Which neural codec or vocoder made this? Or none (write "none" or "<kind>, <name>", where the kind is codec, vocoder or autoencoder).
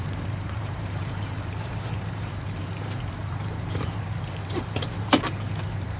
vocoder, BigVGAN v2